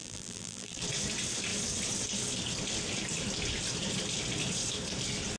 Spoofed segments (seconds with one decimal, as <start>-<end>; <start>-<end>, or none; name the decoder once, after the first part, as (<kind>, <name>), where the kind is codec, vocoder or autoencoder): 0.0-0.8 (vocoder, BigVGAN v2)